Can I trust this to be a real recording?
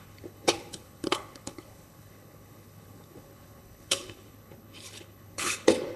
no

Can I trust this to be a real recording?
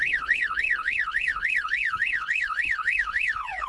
no